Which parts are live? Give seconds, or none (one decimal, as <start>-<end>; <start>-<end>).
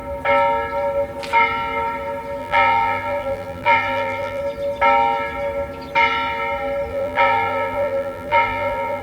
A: 0.0-2.4; 4.4-6.9